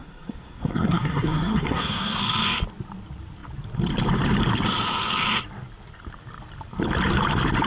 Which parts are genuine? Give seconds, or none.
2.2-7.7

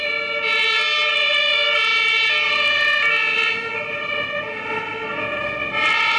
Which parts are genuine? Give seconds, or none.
0.0-6.2

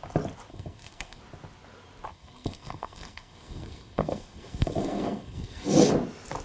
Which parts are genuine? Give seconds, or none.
0.0-0.5; 1.2-2.1; 5.9-6.4